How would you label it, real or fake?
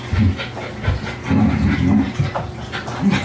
real